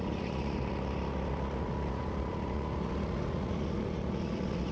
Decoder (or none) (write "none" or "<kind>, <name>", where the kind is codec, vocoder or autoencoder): vocoder, Vocos